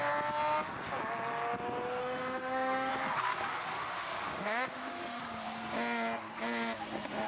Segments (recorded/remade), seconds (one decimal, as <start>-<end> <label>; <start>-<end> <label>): 0.0-2.0 recorded; 2.0-2.9 remade; 2.9-3.7 recorded; 3.7-5.2 remade; 5.2-7.3 recorded

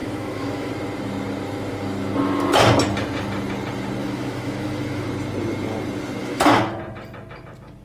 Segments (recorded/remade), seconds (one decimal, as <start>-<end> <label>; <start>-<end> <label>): 0.0-0.7 remade; 0.7-4.0 recorded; 4.0-5.1 remade; 5.1-6.2 recorded; 6.2-6.8 remade; 6.8-7.8 recorded

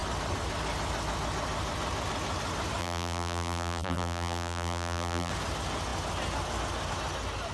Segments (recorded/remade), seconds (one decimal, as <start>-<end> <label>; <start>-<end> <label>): 0.0-2.8 recorded; 2.8-5.3 remade; 5.3-7.5 recorded

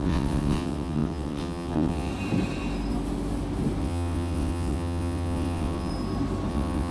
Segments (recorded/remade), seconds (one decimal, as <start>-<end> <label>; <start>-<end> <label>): 0.0-2.1 remade; 2.1-3.8 recorded; 3.8-5.9 remade; 5.9-6.5 recorded; 6.5-6.9 remade

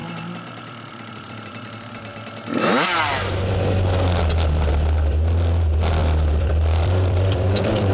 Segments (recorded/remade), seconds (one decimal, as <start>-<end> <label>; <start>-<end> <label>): 0.0-1.5 remade; 1.5-6.0 recorded; 6.0-7.9 remade